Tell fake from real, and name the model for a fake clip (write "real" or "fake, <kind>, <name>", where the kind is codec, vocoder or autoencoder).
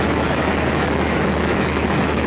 fake, autoencoder, DAC-VAE